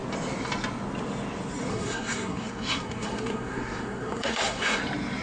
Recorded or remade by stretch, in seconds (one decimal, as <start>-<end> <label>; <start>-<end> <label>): 0.0-1.7 recorded; 1.7-4.8 remade; 4.8-5.2 recorded

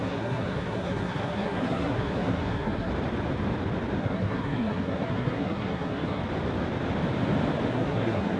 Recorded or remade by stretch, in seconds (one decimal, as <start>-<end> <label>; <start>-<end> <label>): 0.0-2.9 remade; 2.9-4.0 recorded; 4.0-6.2 remade; 6.2-7.7 recorded; 7.7-8.4 remade

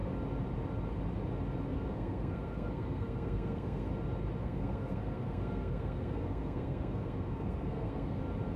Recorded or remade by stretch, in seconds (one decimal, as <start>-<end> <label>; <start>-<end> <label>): 0.0-1.7 recorded; 1.7-3.9 remade; 3.9-4.4 recorded; 4.4-8.2 remade; 8.2-8.6 recorded

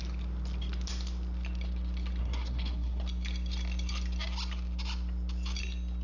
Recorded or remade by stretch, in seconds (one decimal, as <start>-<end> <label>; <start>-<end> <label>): 0.0-2.2 recorded; 2.2-3.0 remade; 3.0-6.0 recorded

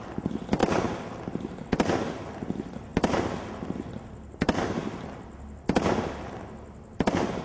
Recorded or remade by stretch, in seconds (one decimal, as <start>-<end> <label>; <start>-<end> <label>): 0.0-7.4 recorded

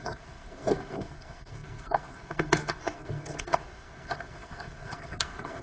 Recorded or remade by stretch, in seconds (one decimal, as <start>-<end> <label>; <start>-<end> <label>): 0.0-5.6 remade

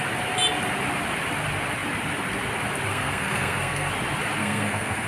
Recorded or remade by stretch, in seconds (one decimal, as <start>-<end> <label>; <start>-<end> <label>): 0.0-2.9 recorded; 2.9-3.9 remade; 3.9-4.4 recorded; 4.4-5.1 remade